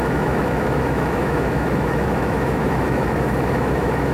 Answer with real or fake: fake